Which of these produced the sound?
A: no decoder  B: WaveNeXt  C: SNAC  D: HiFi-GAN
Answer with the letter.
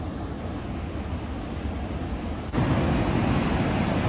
A